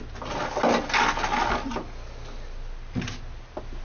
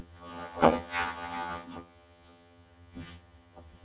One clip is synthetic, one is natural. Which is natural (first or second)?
first